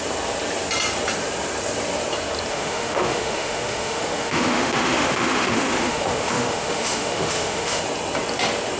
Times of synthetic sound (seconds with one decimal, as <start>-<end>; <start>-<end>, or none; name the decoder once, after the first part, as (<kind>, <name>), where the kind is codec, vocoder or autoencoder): 2.5-7.8 (autoencoder, DAC-VAE)